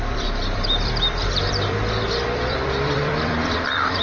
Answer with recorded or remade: remade